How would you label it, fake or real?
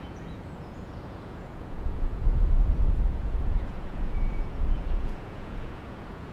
fake